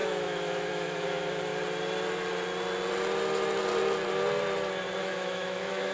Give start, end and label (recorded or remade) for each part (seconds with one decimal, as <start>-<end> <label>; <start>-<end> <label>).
0.0-1.5 remade; 1.5-5.0 recorded; 5.0-5.9 remade